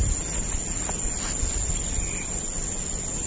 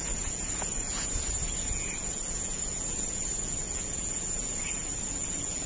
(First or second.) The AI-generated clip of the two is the second